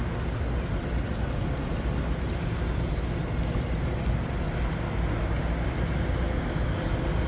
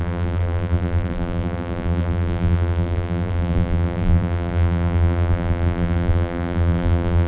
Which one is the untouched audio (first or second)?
first